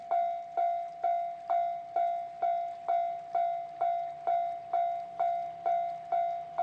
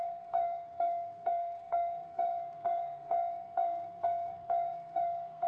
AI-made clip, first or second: second